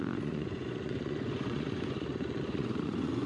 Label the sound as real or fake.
fake